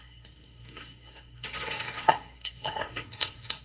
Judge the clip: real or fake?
fake